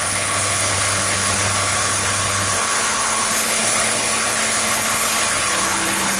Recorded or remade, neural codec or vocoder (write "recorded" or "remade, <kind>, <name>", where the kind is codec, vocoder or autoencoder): remade, codec, HILCodec